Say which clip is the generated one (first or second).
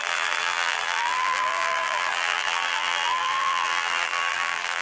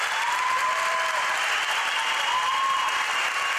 first